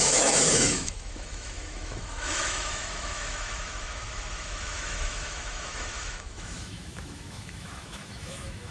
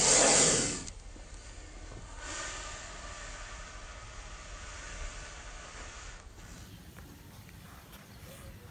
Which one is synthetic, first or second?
first